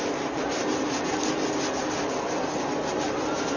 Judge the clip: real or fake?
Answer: real